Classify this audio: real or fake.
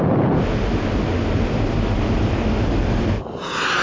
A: real